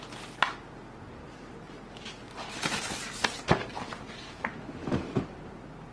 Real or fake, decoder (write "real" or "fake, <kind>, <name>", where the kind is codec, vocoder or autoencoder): real